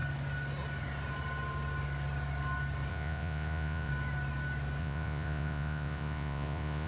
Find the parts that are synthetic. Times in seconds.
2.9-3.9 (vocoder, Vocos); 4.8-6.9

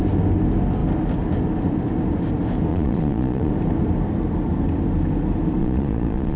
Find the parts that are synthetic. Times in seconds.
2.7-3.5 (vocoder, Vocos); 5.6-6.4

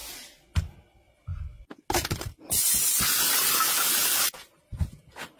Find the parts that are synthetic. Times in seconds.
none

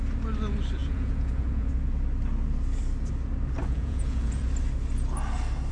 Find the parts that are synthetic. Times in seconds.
0.8-1.7 (vocoder, Vocos); 3.6-4.4

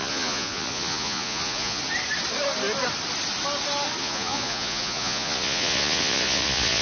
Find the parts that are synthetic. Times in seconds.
0.0-1.8 (vocoder, Vocos); 4.0-6.8